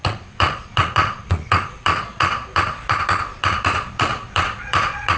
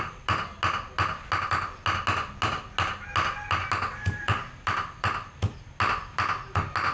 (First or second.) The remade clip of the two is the first